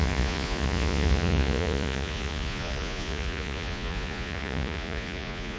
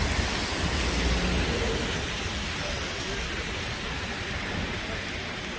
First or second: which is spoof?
first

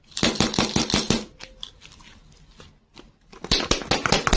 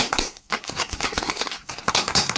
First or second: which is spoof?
second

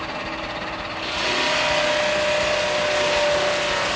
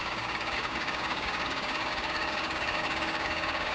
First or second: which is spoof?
second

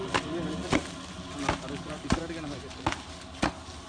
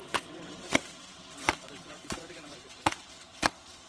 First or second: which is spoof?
second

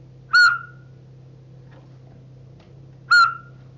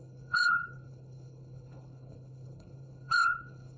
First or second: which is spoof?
second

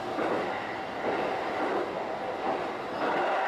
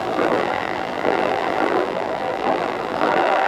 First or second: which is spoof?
second